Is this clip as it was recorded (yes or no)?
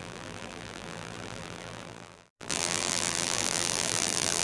no